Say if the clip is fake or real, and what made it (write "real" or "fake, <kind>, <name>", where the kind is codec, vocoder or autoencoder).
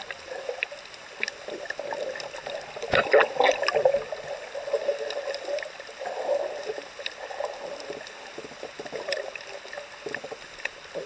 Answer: real